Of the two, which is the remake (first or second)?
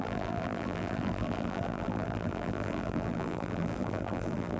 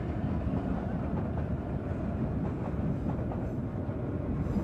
first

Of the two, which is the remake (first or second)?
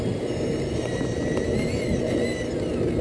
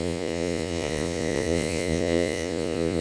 second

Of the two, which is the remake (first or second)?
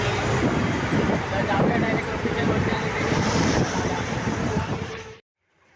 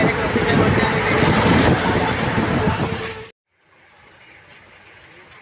first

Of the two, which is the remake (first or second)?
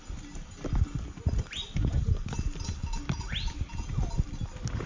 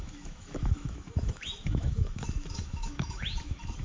second